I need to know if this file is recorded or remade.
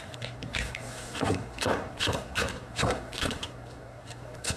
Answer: remade